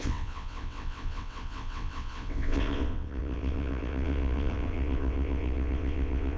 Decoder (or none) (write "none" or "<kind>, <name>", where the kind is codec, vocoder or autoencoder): vocoder, WaveNeXt